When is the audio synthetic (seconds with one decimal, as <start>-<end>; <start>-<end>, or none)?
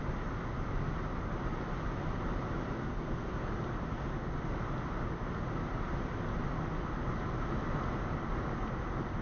2.8-3.5